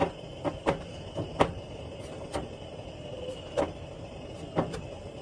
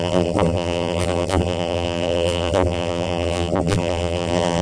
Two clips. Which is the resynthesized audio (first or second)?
second